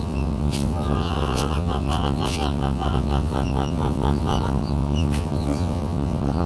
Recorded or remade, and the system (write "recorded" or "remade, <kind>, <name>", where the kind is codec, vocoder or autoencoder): remade, vocoder, WaveNeXt